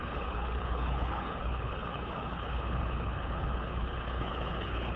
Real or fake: fake